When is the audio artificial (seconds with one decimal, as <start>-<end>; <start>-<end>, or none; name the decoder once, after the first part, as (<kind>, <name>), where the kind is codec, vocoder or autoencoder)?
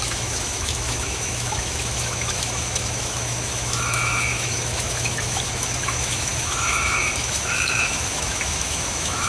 0.0-9.3 (autoencoder, DAC-VAE)